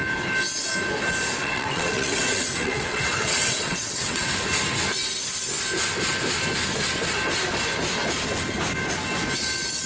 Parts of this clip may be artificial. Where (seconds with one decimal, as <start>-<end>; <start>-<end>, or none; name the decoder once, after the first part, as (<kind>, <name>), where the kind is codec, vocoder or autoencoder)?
1.4-4.3 (vocoder, WaveNeXt)